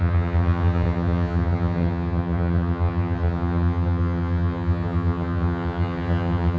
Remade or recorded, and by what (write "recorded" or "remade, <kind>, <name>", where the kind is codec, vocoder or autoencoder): remade, vocoder, HiFi-GAN